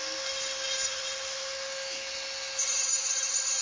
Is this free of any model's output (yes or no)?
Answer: yes